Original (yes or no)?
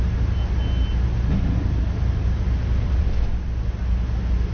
yes